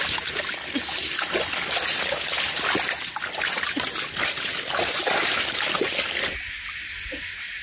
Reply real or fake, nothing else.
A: real